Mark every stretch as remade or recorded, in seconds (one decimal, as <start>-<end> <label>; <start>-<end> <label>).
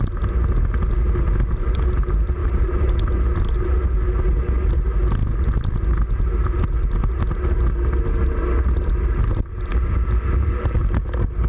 0.0-2.4 recorded; 2.4-2.9 remade; 2.9-11.5 recorded